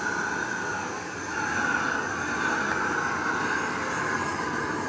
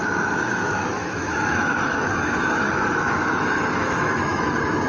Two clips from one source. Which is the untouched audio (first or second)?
first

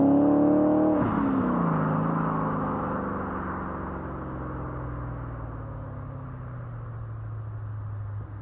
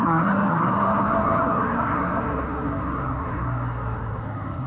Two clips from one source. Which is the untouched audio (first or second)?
first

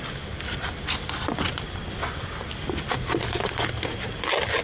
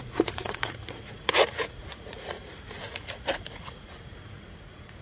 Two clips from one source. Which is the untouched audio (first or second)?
first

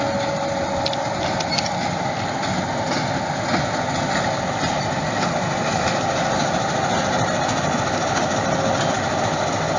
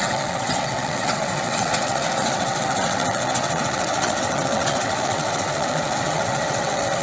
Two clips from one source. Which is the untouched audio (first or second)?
first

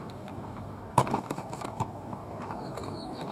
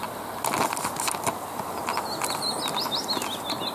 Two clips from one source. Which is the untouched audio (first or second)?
second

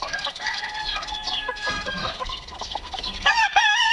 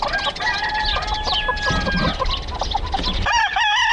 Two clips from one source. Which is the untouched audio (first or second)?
second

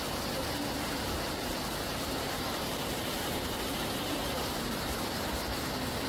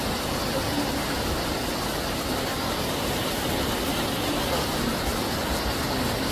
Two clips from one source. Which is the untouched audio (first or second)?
second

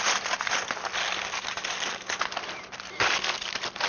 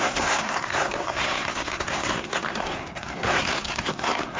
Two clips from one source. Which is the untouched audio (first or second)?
first